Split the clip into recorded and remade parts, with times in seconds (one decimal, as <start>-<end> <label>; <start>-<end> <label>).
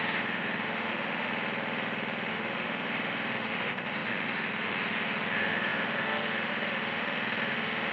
0.0-1.3 remade; 1.3-2.3 recorded; 2.3-7.9 remade